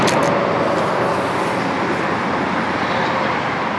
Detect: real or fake real